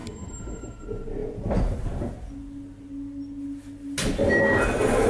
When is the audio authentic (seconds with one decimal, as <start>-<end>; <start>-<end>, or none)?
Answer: 0.0-5.1